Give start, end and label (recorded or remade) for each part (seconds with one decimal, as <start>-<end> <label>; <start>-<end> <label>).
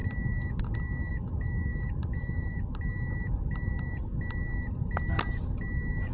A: 0.0-1.7 recorded; 1.7-2.8 remade; 2.8-6.1 recorded